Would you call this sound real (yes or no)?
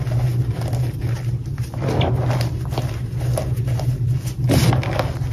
yes